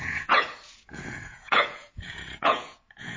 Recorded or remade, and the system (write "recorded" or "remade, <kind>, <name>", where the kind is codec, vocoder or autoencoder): remade, vocoder, Vocos